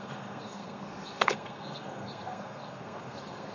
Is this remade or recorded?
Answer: remade